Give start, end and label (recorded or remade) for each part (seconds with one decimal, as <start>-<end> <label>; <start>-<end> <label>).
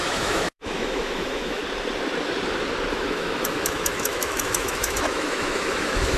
0.0-1.6 remade; 1.6-2.9 recorded; 2.9-6.2 remade